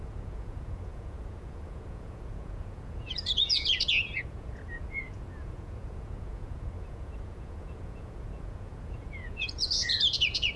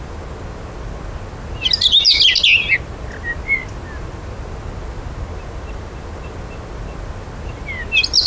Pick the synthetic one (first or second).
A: first